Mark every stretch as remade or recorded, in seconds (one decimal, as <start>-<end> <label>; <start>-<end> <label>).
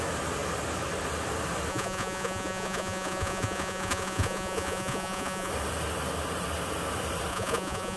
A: 0.0-1.7 recorded; 1.7-5.5 remade; 5.5-7.3 recorded; 7.3-8.0 remade